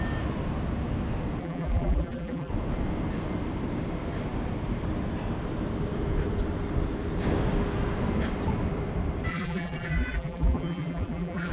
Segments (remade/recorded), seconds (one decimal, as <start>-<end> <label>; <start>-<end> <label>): 0.0-1.4 recorded; 1.4-2.5 remade; 2.5-9.3 recorded; 9.3-11.5 remade